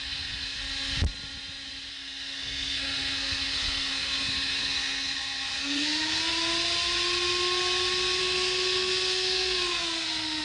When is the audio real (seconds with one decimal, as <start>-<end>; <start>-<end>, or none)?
0.6-1.9; 6.3-8.2